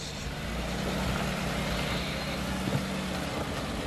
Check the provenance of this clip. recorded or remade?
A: recorded